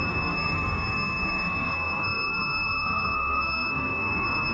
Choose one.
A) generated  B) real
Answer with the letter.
A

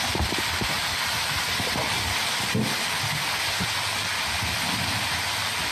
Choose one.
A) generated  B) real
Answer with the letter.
B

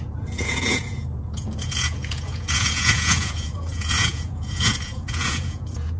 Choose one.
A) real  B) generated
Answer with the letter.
B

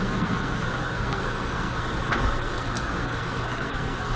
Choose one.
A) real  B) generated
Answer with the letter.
B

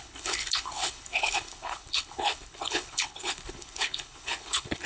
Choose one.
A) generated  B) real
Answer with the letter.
A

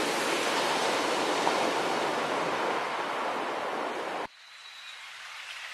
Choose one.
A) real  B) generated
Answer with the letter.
A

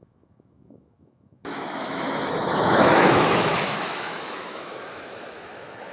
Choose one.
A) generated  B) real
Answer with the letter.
A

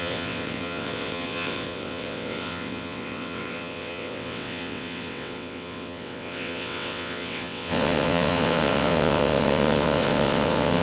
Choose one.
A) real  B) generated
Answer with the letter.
B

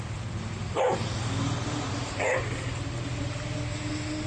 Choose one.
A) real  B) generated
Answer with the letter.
A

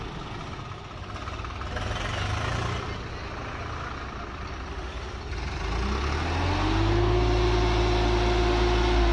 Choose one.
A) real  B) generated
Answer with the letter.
A